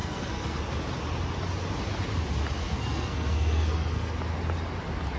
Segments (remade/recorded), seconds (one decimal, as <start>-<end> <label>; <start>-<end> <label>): 0.0-0.6 remade; 0.6-2.6 recorded; 2.6-4.1 remade; 4.1-5.2 recorded